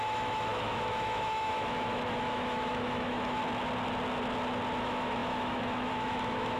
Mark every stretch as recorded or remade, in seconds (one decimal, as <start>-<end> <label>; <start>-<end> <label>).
0.0-3.4 remade; 3.4-4.8 recorded; 4.8-6.6 remade